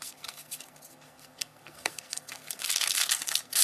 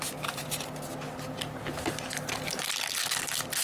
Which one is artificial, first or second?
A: first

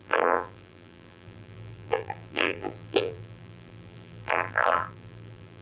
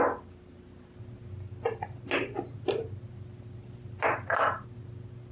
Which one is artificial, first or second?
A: first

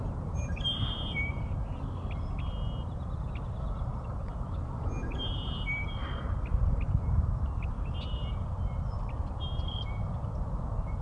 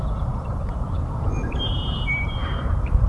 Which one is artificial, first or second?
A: second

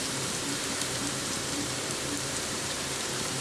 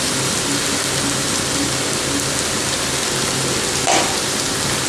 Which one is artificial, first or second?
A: first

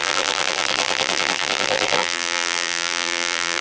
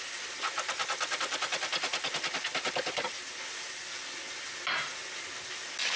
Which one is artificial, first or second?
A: first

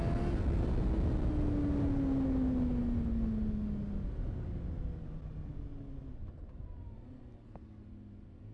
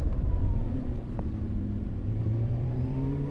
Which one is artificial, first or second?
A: second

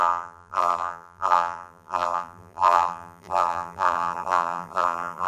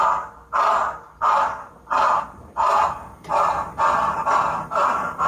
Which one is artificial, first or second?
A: first